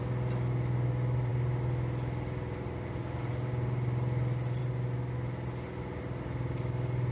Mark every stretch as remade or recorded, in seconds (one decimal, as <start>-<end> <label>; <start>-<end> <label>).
0.0-7.1 recorded